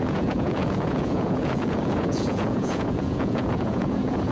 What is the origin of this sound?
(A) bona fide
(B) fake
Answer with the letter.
B